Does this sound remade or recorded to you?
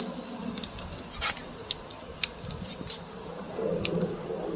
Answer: recorded